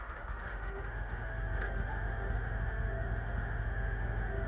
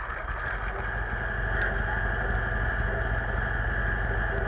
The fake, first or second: first